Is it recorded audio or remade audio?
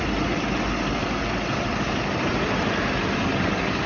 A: recorded